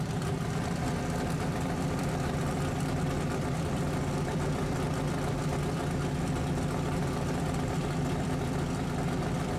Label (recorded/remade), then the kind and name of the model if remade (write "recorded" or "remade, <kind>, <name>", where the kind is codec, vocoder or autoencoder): remade, vocoder, BigVGAN v2